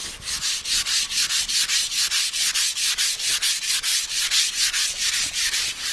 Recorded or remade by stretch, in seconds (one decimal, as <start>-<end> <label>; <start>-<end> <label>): 0.0-3.9 recorded; 3.9-5.1 remade; 5.1-5.9 recorded